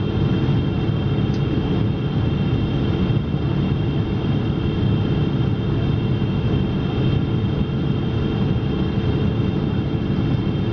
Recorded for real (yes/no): yes